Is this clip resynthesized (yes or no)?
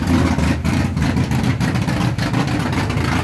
yes